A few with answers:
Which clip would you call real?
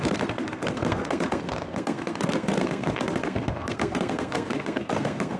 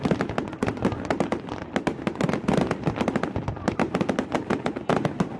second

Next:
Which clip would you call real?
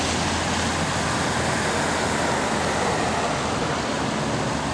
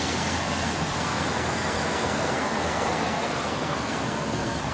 first